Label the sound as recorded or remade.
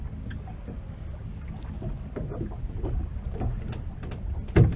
recorded